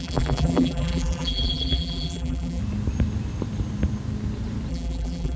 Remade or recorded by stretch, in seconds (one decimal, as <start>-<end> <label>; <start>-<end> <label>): 0.0-2.6 remade; 2.6-4.7 recorded; 4.7-5.4 remade